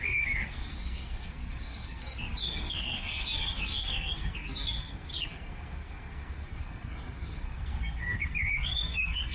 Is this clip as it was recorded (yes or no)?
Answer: no